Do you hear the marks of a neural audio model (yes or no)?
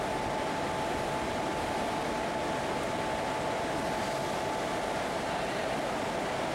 no